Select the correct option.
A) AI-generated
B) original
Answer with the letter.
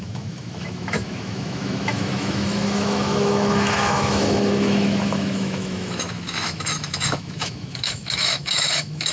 A